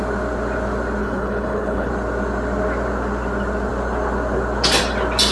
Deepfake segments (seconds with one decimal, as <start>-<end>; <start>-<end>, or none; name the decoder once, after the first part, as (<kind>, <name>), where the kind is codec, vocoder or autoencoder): 1.0-1.9 (codec, HILCodec)